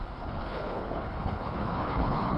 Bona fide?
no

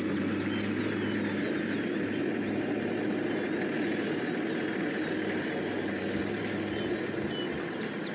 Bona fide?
yes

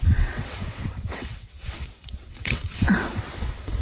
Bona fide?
no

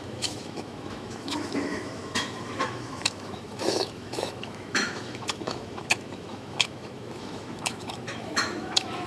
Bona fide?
no